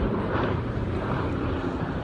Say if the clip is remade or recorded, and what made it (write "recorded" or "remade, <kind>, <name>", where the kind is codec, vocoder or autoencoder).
remade, vocoder, BigVGAN v2